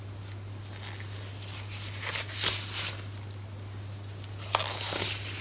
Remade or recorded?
recorded